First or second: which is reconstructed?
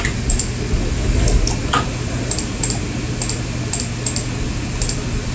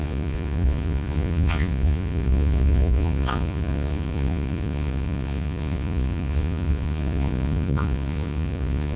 second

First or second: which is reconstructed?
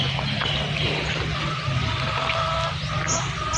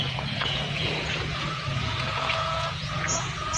second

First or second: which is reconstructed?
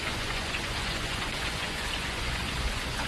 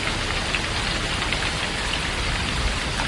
first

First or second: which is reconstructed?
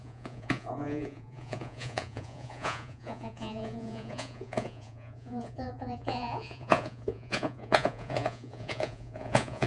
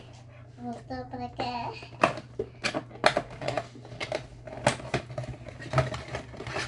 first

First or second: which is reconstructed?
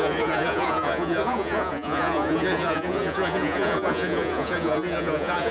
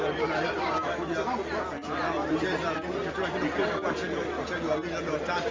first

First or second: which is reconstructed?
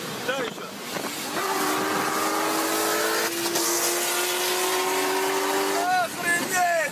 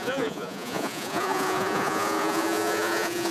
second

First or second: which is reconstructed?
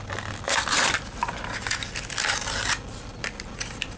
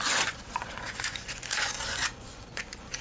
second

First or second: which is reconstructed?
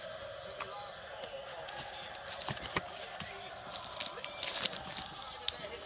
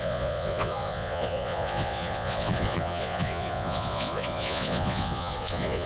second